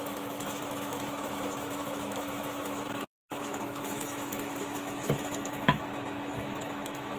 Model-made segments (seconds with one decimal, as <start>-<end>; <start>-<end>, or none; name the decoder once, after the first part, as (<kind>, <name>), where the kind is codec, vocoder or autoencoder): 0.0-7.2 (autoencoder, DAC-VAE)